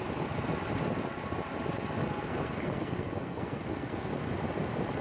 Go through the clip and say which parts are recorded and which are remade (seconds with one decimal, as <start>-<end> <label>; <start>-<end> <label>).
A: 0.0-2.0 recorded; 2.0-4.1 remade; 4.1-5.0 recorded